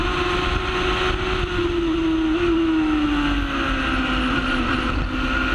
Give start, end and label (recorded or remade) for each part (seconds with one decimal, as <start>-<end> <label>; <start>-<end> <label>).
0.0-0.7 remade; 0.7-5.5 recorded